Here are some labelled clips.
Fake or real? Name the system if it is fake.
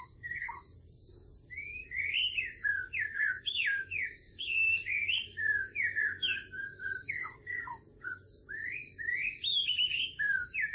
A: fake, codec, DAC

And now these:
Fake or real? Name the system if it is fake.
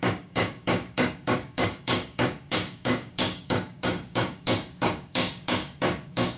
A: fake, codec, DAC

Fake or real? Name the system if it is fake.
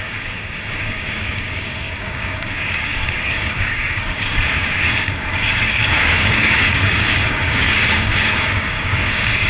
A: fake, codec, DAC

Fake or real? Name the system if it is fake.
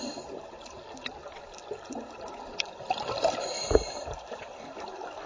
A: real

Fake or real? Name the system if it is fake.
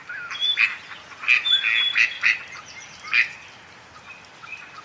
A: real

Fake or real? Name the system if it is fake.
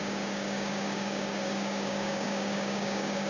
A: fake, codec, DAC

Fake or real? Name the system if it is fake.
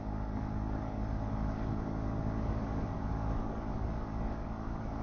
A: fake, codec, DAC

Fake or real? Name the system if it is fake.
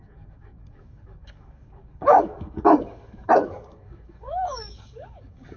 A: fake, codec, DAC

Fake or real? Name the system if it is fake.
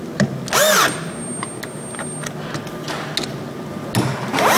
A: real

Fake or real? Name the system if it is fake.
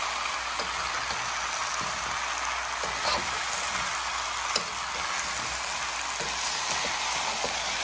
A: real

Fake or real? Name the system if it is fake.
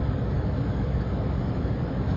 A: fake, codec, DAC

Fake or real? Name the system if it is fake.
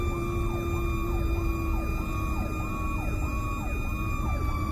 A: real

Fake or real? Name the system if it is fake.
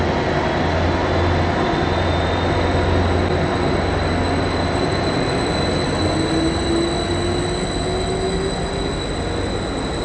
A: real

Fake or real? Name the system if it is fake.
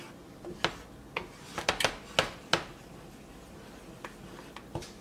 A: real